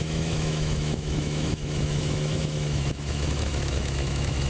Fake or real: fake